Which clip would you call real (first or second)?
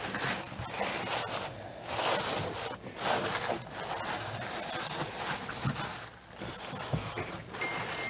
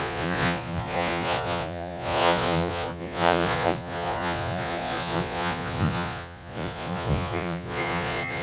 first